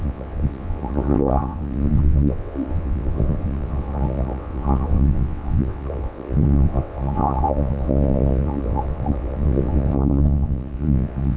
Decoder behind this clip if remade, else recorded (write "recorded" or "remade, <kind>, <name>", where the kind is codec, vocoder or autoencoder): remade, vocoder, WaveNeXt